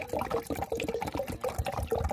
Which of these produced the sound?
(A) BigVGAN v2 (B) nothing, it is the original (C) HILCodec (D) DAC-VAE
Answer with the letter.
B